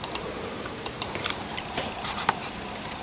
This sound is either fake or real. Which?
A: fake